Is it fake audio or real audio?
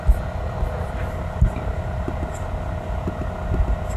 real